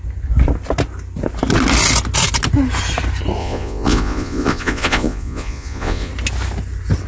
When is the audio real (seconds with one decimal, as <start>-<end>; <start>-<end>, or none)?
0.0-3.4; 6.1-7.1